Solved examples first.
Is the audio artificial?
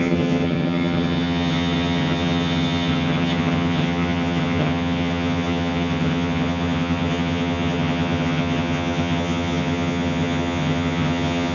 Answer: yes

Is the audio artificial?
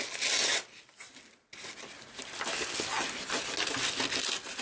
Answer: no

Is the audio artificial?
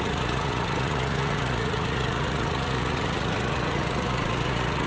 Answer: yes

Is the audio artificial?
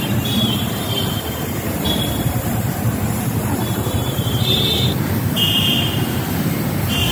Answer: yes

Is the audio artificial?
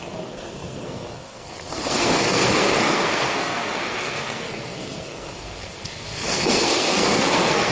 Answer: yes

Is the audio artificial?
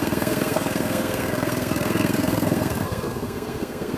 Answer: yes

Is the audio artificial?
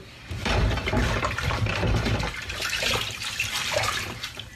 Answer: yes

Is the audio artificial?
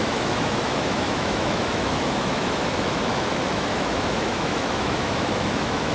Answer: yes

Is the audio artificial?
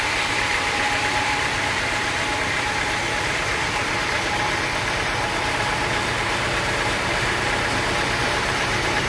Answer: yes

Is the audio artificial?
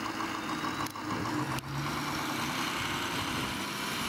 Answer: no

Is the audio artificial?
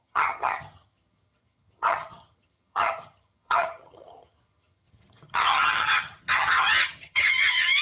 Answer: yes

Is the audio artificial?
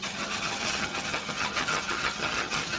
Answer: yes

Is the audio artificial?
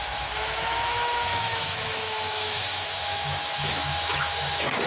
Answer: yes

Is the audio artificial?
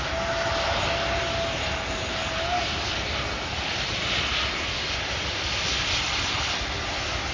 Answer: no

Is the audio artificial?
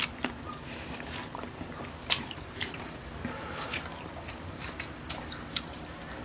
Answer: yes